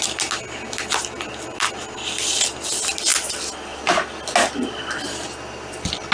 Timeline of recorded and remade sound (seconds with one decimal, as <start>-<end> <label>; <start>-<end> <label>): 0.0-6.1 recorded

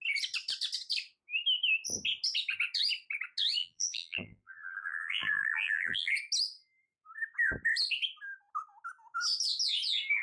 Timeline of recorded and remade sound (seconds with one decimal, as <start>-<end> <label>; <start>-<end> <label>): 0.0-3.6 recorded; 3.6-6.1 remade; 6.1-10.2 recorded

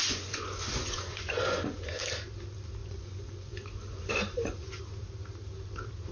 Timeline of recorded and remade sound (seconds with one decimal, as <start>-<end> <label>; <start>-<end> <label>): 0.0-2.0 remade; 2.0-2.8 recorded; 2.8-4.8 remade; 4.8-6.1 recorded

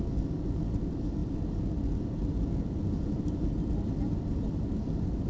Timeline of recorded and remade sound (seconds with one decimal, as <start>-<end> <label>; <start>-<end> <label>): 0.0-5.3 recorded

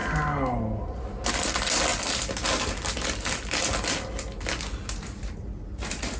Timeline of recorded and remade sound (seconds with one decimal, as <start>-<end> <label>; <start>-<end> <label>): 0.0-6.2 recorded